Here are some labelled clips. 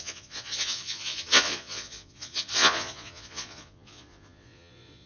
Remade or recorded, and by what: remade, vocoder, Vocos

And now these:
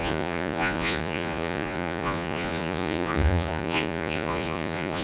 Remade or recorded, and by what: remade, vocoder, Vocos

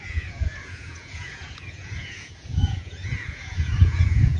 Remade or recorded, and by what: remade, vocoder, Vocos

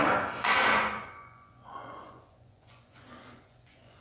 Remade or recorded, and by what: remade, vocoder, Vocos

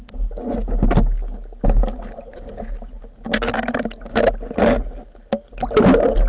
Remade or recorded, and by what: recorded